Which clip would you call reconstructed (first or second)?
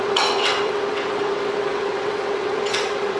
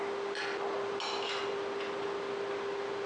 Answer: first